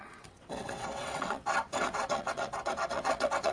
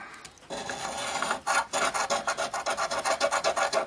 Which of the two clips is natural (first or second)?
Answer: second